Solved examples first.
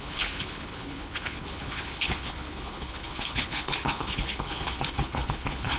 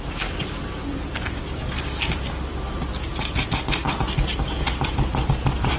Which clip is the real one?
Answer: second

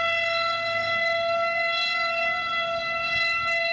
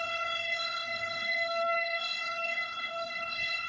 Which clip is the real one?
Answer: first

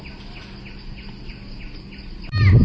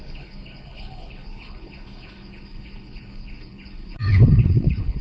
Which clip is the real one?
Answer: first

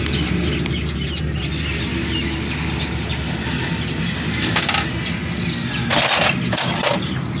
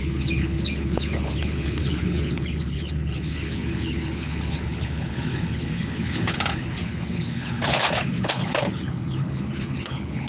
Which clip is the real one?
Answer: first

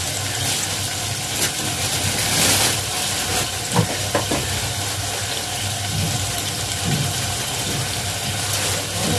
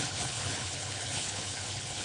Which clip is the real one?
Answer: first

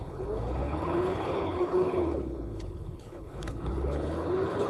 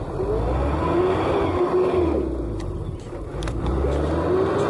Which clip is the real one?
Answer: second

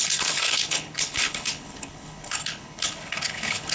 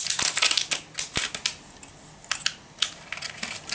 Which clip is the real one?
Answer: second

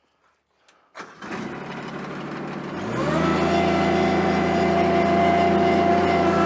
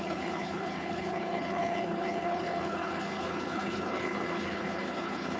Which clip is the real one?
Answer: first